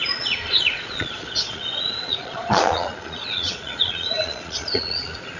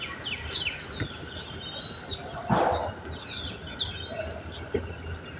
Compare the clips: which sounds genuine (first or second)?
second